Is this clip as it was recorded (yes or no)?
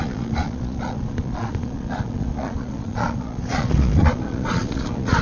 no